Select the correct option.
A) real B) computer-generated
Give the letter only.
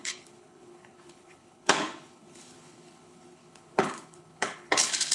B